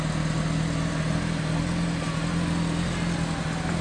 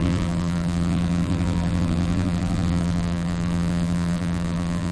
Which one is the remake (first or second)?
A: second